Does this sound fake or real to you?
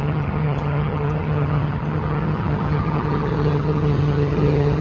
fake